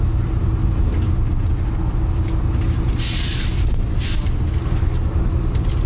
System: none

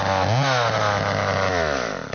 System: none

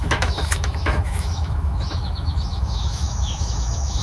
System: autoencoder, DAC-VAE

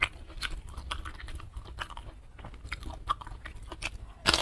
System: none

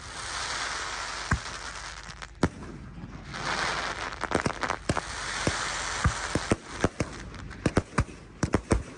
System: none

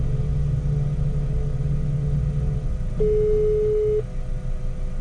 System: none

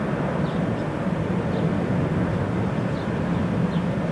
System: none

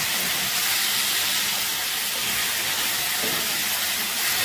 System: none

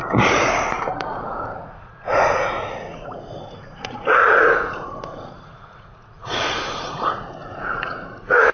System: vocoder, Vocos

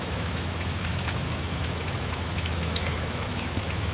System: autoencoder, DAC-VAE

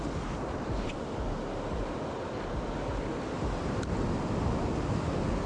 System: none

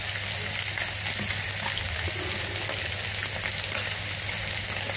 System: none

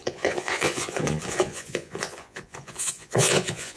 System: vocoder, Vocos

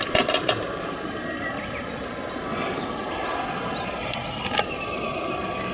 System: none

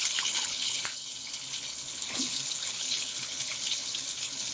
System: codec, HILCodec